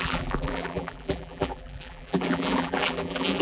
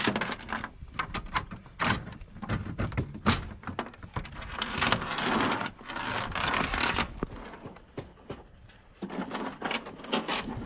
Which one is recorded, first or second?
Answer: second